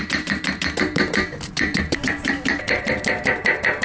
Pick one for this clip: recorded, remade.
remade